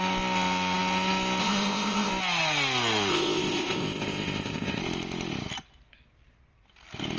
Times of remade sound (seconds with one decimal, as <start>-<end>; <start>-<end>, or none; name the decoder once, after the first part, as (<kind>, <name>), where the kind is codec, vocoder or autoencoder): 1.4-2.1 (codec, ZipCodec); 3.1-4.8